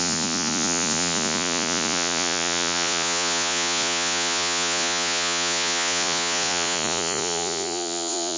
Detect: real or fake fake